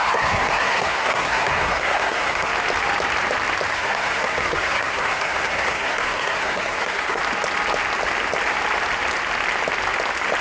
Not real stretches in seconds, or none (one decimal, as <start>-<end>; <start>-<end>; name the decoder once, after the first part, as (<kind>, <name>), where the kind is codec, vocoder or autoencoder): 0.0-2.5 (codec, SNAC); 3.7-7.2